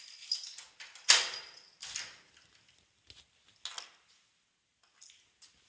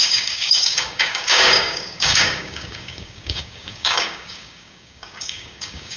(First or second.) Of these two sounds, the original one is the first